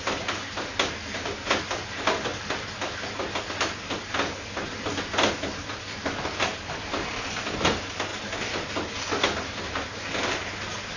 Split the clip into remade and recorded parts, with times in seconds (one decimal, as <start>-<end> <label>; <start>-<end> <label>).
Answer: 0.0-11.0 recorded